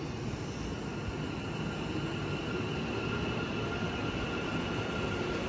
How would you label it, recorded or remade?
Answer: recorded